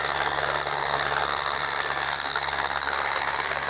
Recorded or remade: remade